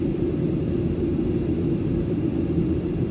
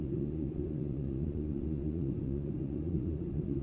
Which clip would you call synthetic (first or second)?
second